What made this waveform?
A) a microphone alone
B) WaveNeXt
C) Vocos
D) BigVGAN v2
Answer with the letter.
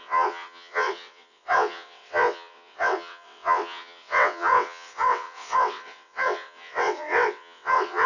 B